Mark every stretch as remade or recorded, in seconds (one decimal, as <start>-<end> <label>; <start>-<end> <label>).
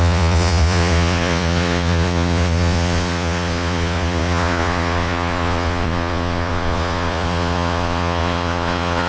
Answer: 0.0-9.1 remade